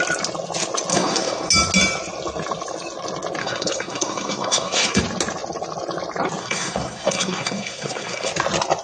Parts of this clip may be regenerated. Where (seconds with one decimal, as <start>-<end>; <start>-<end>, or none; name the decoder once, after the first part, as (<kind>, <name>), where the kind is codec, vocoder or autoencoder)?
0.9-1.5 (codec, SNAC); 3.4-5.0; 6.4-8.3